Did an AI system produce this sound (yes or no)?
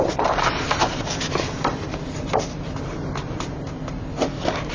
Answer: no